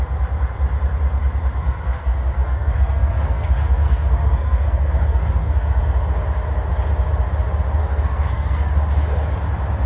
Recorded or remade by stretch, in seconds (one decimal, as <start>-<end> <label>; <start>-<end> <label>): 0.0-1.6 recorded; 1.6-5.8 remade; 5.8-7.8 recorded; 7.8-8.7 remade; 8.7-9.9 recorded